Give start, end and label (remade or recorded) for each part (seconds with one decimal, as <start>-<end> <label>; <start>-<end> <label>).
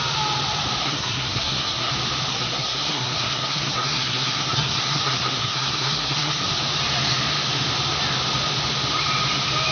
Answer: 0.0-0.8 recorded; 0.8-1.9 remade; 1.9-2.3 recorded; 2.3-6.5 remade; 6.5-9.7 recorded